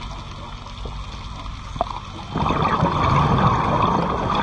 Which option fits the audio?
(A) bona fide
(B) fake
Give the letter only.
A